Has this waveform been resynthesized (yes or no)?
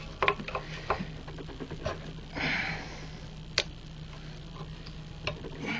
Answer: no